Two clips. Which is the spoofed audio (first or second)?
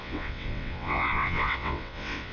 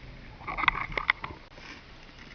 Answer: first